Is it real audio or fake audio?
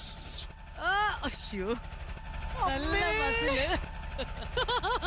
real